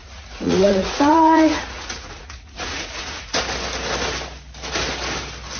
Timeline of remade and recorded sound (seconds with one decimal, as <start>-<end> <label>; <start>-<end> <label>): 0.0-3.4 remade; 3.4-5.6 recorded